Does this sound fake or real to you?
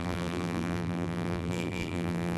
fake